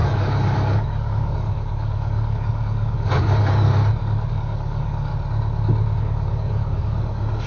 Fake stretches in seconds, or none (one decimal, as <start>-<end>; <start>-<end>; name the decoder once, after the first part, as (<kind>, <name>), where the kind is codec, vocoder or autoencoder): 0.0-3.7 (codec, DAC); 4.3-5.1; 6.0-7.5

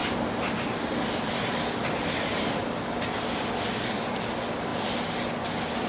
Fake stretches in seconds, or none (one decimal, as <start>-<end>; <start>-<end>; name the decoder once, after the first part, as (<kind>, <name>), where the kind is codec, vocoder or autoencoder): none

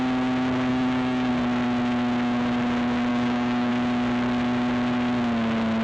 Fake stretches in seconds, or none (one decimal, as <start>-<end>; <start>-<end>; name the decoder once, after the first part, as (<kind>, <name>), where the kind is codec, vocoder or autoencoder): 0.7-1.3 (codec, DAC); 3.1-3.7

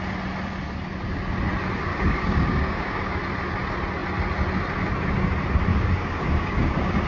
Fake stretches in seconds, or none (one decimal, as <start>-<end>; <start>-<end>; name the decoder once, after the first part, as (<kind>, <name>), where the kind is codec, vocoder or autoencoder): 1.9-3.2 (codec, DAC); 5.7-7.1

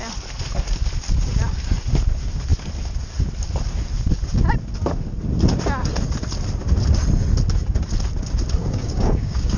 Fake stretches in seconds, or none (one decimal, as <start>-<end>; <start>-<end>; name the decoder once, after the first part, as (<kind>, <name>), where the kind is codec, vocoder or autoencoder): 8.6-9.6 (codec, DAC)